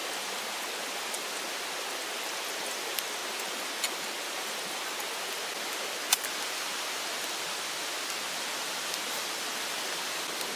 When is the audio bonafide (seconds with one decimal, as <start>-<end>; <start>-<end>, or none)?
0.0-10.6

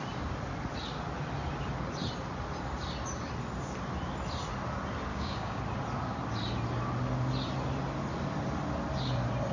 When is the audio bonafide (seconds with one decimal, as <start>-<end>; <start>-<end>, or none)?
0.0-5.1; 5.6-9.5

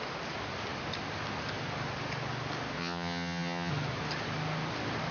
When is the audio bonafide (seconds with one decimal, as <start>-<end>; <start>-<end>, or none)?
0.0-2.8; 3.7-5.1

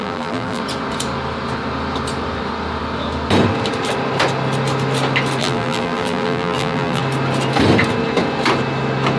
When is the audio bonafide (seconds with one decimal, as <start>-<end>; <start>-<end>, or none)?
0.6-5.4; 7.0-9.2

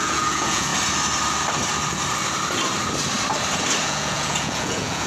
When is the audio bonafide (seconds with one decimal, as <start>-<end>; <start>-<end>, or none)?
0.7-3.8

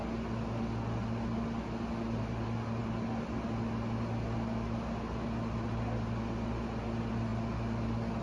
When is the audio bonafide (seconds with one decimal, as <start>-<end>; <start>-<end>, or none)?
0.0-8.2

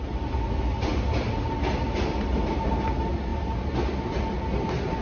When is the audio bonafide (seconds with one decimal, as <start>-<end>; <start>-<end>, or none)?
0.0-5.0

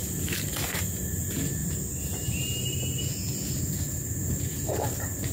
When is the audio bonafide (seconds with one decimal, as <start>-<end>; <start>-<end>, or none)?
1.2-1.6; 3.0-5.3